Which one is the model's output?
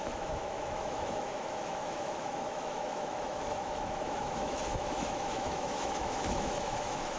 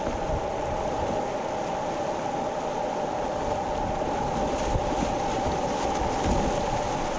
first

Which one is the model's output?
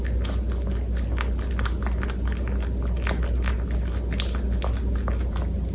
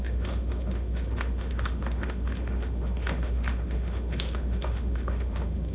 second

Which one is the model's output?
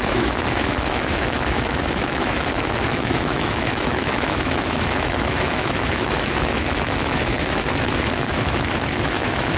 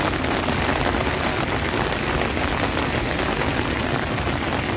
first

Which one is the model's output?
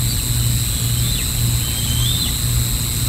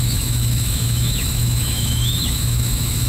second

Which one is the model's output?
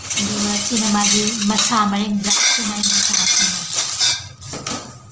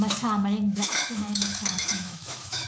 second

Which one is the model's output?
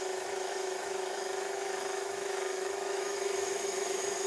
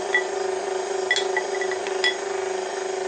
first